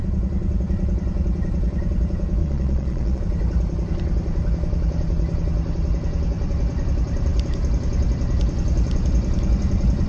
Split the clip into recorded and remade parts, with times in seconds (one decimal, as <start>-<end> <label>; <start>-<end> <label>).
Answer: 0.0-2.4 recorded; 2.4-3.2 remade; 3.2-10.1 recorded